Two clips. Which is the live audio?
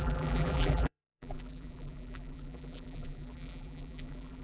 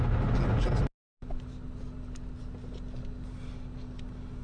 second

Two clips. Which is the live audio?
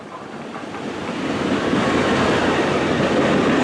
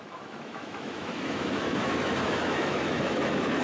first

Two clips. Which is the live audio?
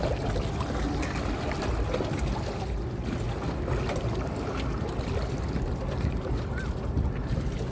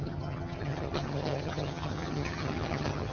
first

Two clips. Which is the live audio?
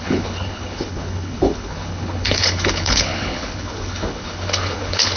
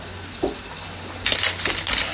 second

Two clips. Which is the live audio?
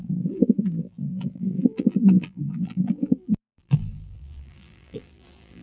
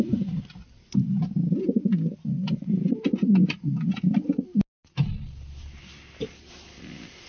second